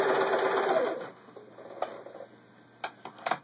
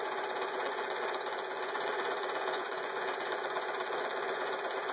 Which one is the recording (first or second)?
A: first